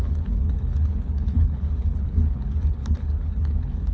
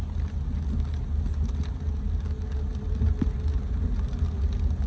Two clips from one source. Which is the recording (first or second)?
second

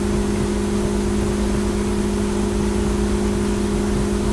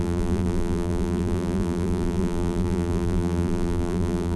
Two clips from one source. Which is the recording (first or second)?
first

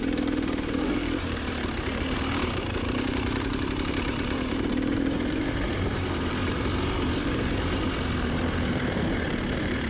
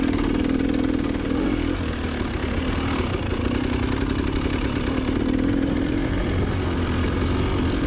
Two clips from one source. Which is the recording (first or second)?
second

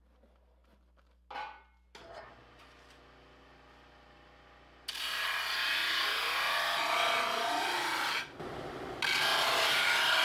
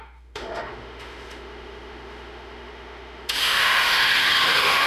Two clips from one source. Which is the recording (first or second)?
first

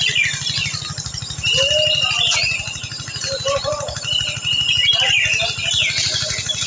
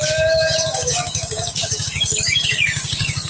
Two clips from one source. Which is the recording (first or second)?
first